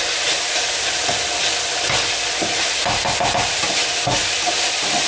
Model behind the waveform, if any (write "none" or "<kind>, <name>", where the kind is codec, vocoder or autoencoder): none